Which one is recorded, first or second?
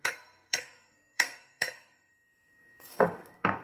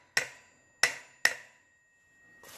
second